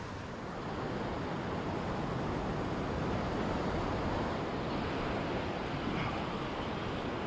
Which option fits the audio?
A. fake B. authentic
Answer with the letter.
B